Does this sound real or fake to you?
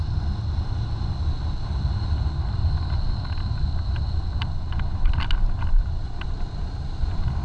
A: real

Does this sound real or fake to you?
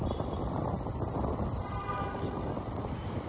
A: fake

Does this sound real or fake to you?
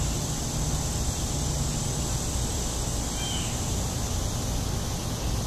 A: real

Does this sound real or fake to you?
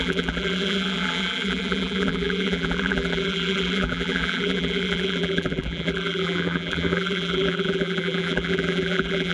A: fake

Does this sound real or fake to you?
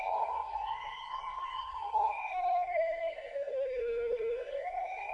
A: fake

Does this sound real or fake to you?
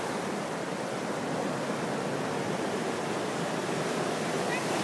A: real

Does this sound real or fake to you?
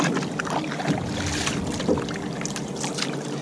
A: real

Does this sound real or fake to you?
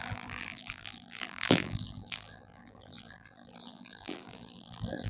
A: fake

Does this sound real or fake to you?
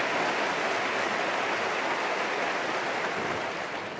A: real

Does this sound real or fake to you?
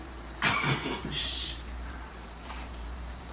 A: fake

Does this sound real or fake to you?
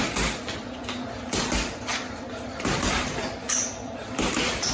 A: fake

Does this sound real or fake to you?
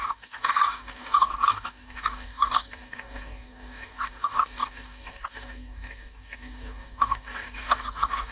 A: fake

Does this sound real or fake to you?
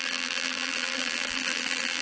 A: fake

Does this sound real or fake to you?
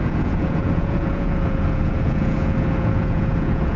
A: fake